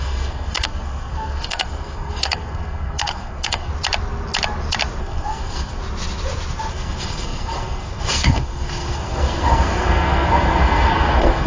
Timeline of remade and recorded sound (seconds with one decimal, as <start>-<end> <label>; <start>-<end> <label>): 0.0-3.7 remade; 3.7-5.0 recorded; 5.0-5.8 remade; 5.8-6.7 recorded; 6.7-11.5 remade